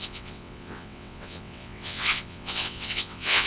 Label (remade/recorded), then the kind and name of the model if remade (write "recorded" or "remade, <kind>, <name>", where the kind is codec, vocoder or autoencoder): remade, vocoder, WaveNeXt